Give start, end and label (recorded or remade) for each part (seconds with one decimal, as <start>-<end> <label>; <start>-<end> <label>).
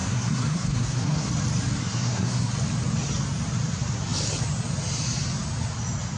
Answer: 0.0-1.3 remade; 1.3-1.8 recorded; 1.8-2.5 remade; 2.5-6.2 recorded